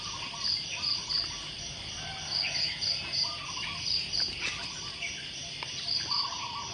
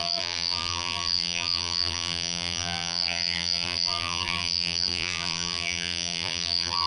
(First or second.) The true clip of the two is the first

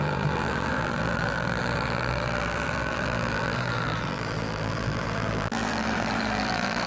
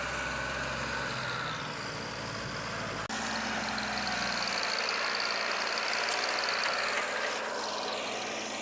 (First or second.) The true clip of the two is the second